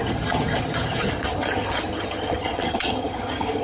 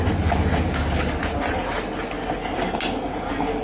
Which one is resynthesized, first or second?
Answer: first